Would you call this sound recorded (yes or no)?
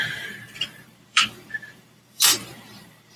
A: no